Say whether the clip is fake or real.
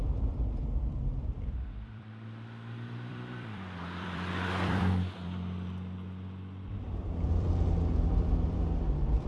fake